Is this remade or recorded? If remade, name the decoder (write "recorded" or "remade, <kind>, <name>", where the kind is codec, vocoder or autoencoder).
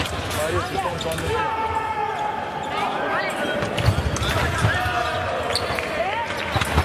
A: recorded